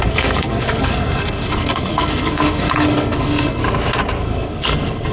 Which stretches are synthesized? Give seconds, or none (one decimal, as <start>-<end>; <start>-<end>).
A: 0.0-3.6; 4.2-5.1